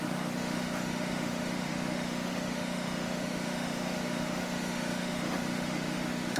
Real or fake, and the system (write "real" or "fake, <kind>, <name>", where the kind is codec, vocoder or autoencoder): fake, autoencoder, DAC-VAE